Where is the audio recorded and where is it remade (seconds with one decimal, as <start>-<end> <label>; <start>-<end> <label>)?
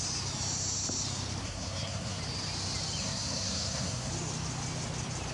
0.0-1.4 recorded; 1.4-2.2 remade; 2.2-3.0 recorded; 3.0-4.1 remade; 4.1-5.3 recorded